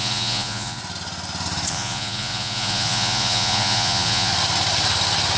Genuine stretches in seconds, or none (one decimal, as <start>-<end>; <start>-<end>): 0.8-1.7; 4.3-5.4